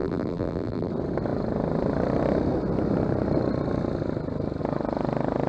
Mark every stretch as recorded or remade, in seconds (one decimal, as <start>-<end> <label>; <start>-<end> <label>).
0.0-0.9 remade; 0.9-5.5 recorded